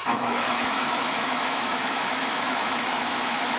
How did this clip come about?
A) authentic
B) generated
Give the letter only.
B